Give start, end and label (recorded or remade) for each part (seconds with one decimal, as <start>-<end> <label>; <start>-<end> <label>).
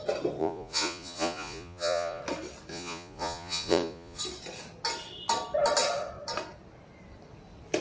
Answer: 0.0-0.4 recorded; 0.4-2.2 remade; 2.2-2.7 recorded; 2.7-4.2 remade; 4.2-7.8 recorded